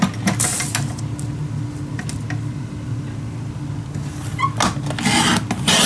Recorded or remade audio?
recorded